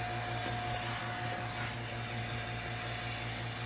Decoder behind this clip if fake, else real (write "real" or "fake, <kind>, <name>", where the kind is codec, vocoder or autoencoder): real